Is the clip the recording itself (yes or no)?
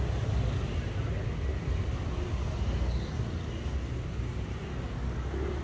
yes